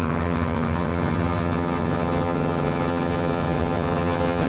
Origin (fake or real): fake